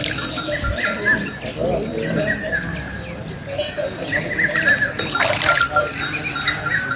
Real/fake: real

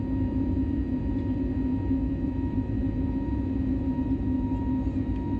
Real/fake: real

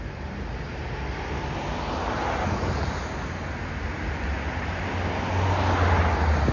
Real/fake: real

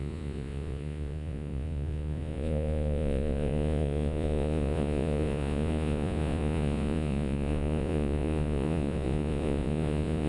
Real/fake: fake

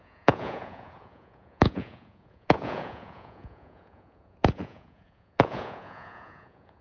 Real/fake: fake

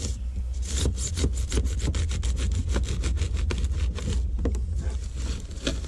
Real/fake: real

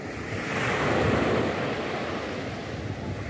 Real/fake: real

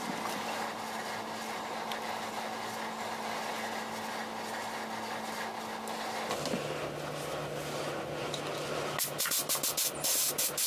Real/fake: real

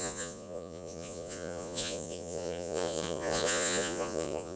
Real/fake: fake